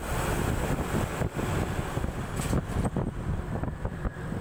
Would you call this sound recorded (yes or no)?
yes